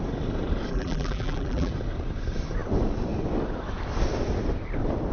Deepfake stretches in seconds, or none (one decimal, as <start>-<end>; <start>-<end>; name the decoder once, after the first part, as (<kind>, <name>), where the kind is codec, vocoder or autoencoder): 0.7-1.7 (vocoder, BigVGAN v2)